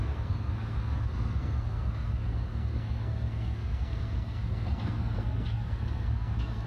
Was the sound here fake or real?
fake